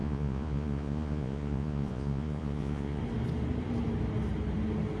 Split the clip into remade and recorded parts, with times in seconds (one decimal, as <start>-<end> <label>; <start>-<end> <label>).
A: 0.0-3.0 remade; 3.0-5.0 recorded